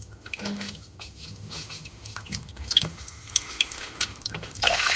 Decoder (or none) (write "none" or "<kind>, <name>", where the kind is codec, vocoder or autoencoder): autoencoder, DAC-VAE